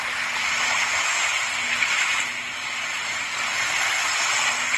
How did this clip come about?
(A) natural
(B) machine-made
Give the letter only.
A